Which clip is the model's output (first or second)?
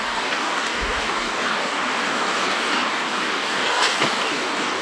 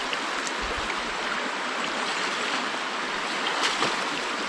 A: first